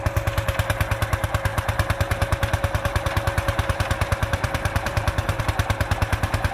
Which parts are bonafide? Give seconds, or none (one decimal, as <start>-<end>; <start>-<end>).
0.0-1.5; 5.4-6.5